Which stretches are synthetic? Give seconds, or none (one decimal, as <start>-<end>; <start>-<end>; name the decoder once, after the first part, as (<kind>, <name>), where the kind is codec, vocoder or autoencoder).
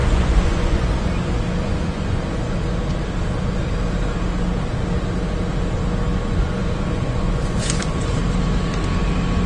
0.0-1.1 (vocoder, Vocos); 1.6-2.2; 6.1-8.2